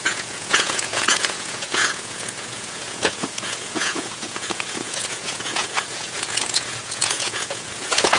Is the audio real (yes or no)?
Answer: no